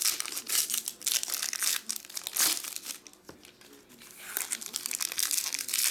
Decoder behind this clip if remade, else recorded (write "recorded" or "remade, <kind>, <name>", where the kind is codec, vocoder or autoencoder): recorded